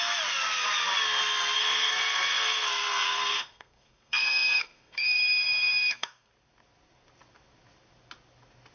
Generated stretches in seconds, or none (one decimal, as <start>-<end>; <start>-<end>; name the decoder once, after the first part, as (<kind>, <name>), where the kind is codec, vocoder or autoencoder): 1.6-6.3 (codec, SNAC)